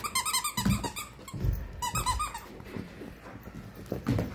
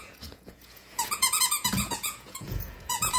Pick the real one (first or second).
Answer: first